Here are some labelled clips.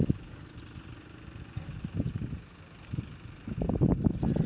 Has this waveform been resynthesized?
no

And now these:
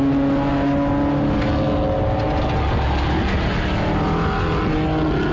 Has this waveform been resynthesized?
no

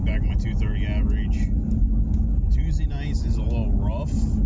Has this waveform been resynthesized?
no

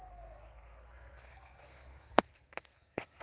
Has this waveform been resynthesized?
yes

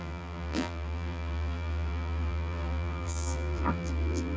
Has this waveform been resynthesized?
yes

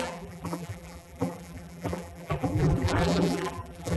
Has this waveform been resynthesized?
yes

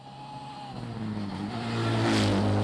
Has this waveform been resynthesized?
no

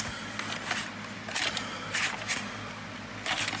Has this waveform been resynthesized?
no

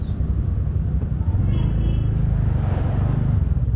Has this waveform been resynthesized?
no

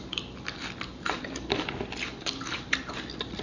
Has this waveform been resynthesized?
yes